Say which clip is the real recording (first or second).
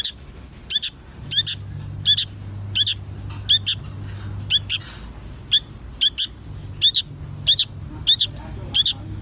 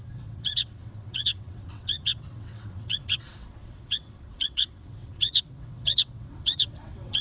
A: first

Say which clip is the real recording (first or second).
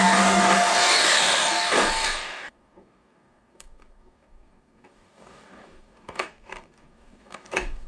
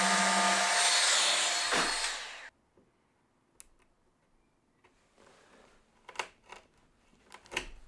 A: second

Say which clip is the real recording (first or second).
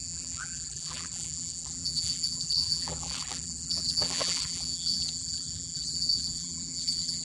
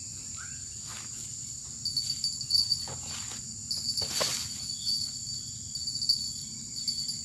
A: second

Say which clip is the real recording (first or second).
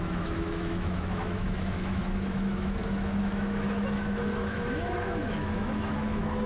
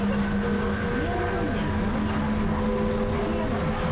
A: second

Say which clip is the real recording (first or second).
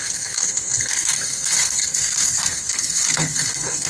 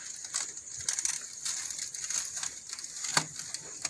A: second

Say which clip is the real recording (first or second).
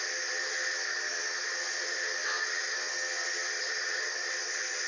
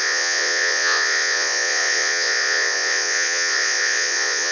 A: first